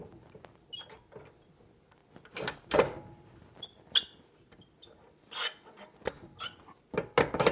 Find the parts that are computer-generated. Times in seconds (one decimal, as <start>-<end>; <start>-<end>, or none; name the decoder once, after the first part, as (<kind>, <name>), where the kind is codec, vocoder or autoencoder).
none